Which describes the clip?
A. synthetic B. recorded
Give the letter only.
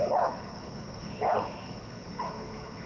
A